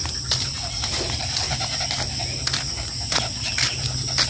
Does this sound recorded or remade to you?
recorded